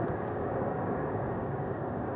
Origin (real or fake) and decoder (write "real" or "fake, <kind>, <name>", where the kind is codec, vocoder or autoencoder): fake, codec, DAC